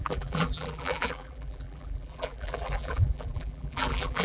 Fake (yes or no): yes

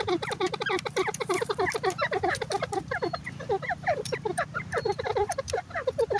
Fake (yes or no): yes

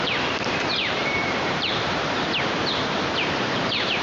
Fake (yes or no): yes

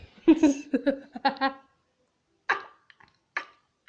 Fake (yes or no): no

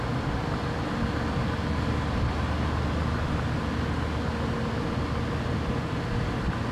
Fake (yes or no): no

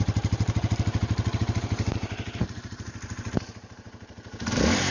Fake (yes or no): yes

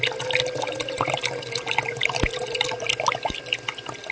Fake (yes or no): no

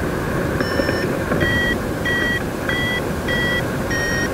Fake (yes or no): yes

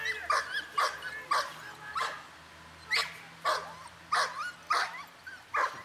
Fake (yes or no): no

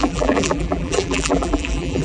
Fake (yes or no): yes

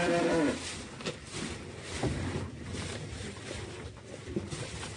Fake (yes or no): no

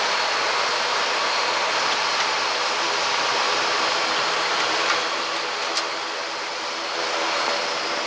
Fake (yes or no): yes